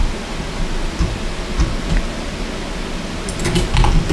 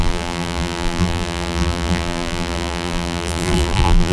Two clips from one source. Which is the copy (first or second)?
second